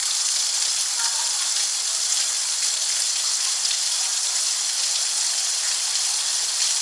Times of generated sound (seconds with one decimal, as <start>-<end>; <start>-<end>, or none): 0.0-4.0